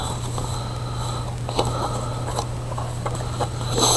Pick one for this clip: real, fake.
real